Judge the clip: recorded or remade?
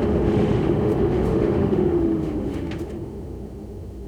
remade